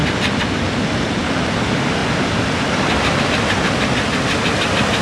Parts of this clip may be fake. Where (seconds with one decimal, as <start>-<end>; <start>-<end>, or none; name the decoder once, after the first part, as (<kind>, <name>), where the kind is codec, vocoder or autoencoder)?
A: none